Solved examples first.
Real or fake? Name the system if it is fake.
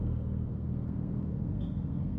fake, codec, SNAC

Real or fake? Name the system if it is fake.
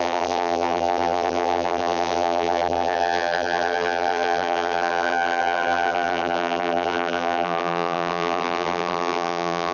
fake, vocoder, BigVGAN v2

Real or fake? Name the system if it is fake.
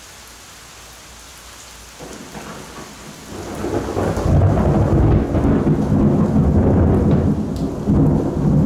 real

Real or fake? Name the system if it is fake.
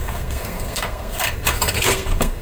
fake, codec, SNAC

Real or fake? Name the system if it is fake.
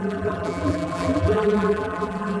fake, vocoder, BigVGAN v2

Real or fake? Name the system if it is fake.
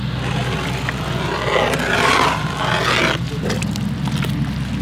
real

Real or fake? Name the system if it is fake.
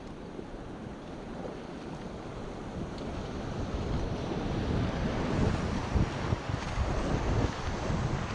real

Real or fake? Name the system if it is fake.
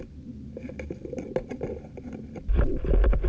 real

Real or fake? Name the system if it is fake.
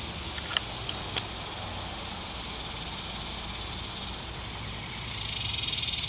real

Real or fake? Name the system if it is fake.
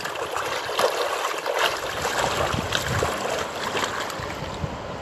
real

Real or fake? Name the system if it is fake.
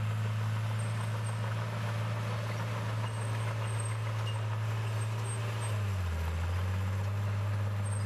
real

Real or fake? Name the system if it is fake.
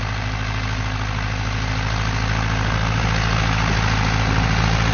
real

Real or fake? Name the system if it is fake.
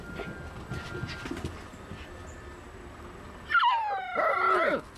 real